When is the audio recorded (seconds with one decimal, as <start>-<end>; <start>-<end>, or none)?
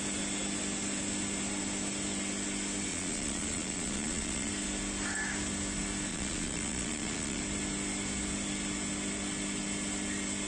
0.0-2.9; 4.5-6.1; 7.4-10.5